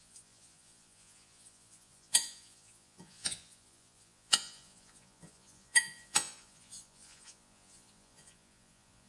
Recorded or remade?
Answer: remade